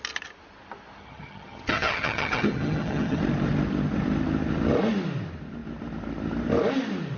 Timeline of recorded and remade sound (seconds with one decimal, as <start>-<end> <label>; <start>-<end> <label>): 0.0-1.0 recorded; 1.0-3.2 remade; 3.2-7.2 recorded